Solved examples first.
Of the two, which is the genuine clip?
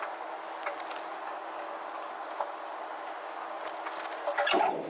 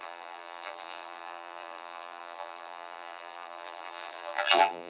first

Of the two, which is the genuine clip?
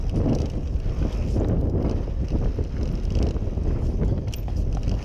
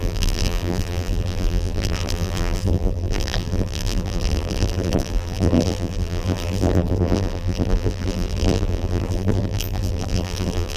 first